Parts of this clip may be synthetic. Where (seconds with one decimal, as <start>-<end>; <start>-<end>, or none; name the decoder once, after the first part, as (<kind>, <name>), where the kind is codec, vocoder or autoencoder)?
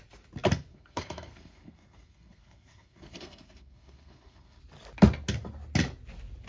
0.7-4.6 (codec, SNAC)